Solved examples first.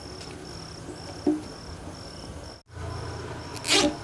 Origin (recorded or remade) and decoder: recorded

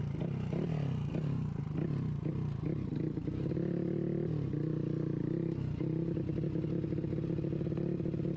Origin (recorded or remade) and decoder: recorded